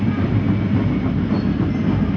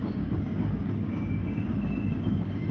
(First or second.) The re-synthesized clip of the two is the second